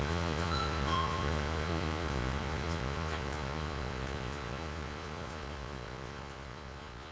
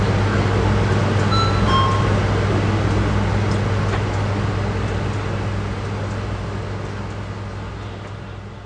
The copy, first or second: first